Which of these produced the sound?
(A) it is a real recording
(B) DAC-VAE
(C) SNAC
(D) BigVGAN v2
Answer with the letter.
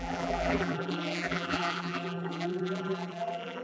D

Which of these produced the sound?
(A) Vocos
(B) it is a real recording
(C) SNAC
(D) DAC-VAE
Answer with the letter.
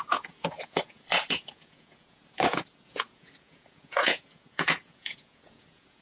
A